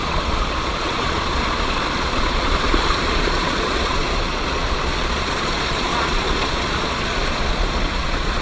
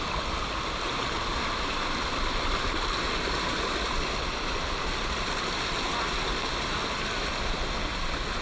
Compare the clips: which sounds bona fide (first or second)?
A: second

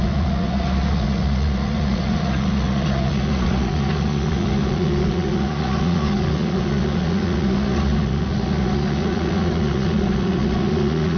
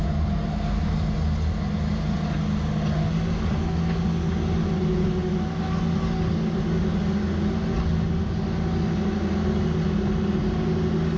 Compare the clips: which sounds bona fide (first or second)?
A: second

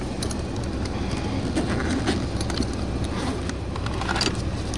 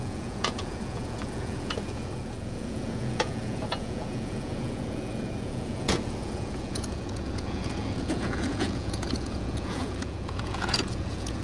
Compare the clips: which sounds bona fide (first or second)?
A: first